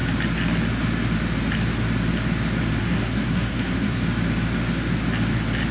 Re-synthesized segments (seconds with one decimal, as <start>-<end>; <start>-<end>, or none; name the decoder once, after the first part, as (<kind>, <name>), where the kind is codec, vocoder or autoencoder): 2.8-4.0 (codec, SNAC)